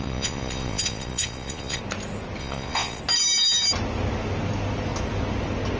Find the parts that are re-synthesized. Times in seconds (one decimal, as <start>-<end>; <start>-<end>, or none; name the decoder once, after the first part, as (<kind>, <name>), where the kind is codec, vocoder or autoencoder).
0.0-1.8 (vocoder, Vocos); 2.4-3.0